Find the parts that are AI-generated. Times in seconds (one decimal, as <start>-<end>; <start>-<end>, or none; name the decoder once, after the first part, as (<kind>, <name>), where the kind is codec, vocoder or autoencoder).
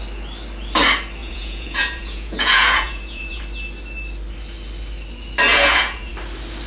1.2-3.4 (vocoder, Vocos); 5.5-6.1